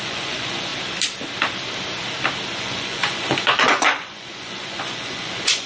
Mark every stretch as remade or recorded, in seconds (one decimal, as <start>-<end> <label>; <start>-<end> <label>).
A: 0.0-0.7 remade; 0.7-2.6 recorded; 2.6-5.7 remade